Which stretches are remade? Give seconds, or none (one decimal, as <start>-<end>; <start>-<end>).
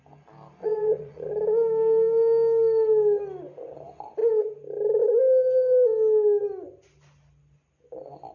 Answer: 0.6-1.3